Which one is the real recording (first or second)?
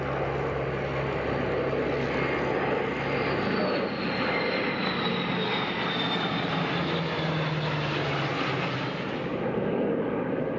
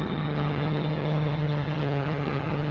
first